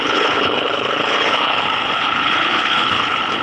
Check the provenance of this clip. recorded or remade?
remade